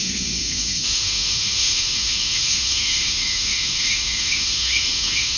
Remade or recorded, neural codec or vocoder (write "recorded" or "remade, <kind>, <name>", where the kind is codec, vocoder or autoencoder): remade, autoencoder, DAC-VAE